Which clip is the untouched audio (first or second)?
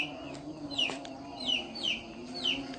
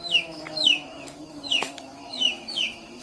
first